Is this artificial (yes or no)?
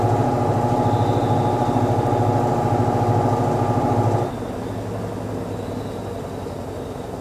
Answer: no